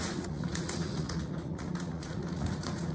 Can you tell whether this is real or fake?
fake